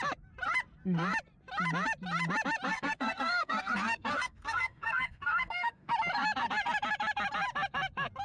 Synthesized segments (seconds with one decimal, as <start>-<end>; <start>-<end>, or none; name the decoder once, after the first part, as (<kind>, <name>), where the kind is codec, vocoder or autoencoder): 2.7-5.9 (codec, SNAC)